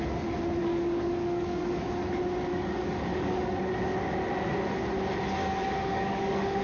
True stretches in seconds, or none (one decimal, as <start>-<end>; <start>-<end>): 0.0-0.6; 1.9-2.5; 3.6-5.4